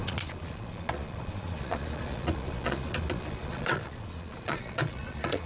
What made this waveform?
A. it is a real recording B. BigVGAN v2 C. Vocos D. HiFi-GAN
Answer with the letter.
C